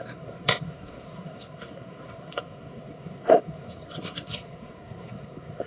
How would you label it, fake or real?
fake